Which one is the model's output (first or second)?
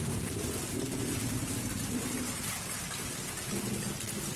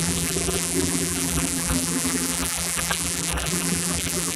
second